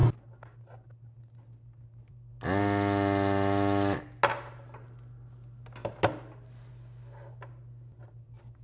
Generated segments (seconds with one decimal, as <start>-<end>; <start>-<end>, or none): none